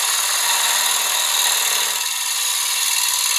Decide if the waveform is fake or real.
real